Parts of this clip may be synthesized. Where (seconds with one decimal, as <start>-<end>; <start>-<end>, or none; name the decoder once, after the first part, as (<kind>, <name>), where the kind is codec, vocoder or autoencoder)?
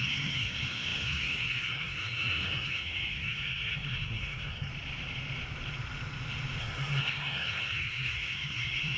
0.0-4.7 (codec, SNAC); 6.6-9.0